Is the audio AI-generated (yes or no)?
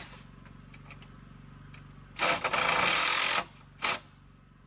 no